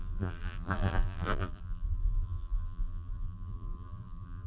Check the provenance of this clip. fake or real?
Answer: fake